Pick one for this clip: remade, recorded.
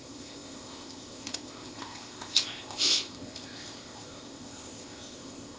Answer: remade